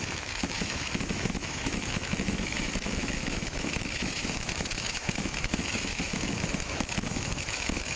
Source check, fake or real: fake